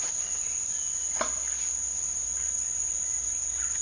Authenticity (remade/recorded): recorded